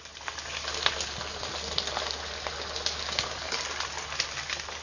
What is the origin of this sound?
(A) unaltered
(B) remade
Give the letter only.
A